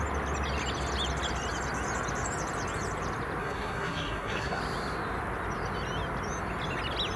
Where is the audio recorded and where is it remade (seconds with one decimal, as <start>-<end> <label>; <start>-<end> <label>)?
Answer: 0.0-3.4 recorded; 3.4-4.6 remade; 4.6-7.2 recorded